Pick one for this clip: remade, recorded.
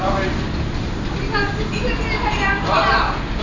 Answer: recorded